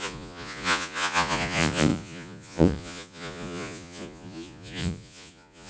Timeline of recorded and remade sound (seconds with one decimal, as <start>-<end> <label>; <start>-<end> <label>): 0.0-5.7 remade